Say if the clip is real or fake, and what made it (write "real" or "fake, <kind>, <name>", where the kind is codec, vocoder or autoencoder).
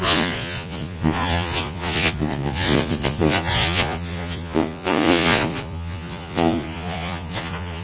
fake, vocoder, Vocos